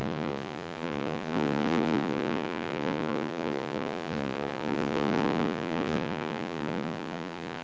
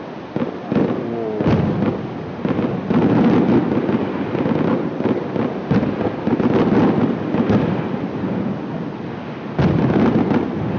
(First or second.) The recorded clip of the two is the second